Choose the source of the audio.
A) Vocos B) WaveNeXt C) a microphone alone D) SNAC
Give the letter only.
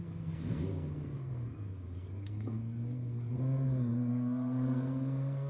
D